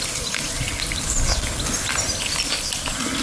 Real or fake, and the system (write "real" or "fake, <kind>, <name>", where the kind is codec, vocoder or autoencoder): real